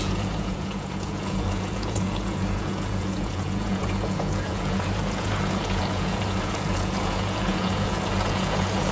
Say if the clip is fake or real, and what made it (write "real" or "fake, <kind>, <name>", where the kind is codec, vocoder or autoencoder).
fake, vocoder, Vocos